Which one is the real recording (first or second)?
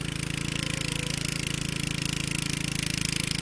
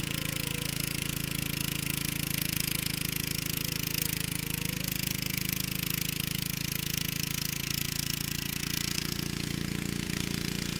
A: first